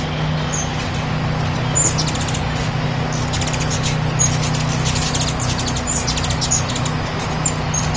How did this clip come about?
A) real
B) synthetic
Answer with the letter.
A